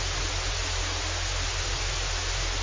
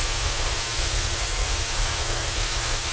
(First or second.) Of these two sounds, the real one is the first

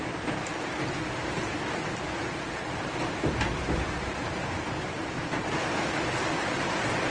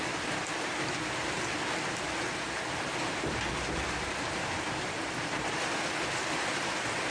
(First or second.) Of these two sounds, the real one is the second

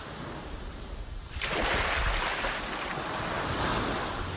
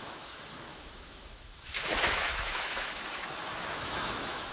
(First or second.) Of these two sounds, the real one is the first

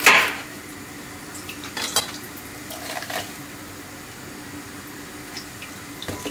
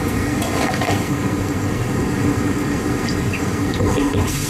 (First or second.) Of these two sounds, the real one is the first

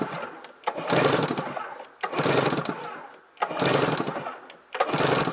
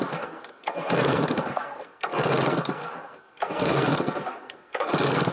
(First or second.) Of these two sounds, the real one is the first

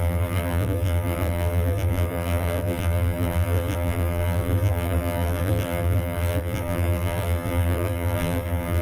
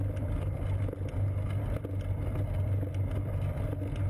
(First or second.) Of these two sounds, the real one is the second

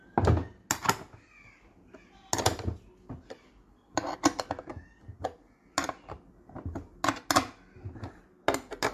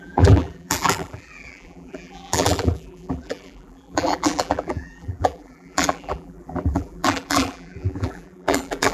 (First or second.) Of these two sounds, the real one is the first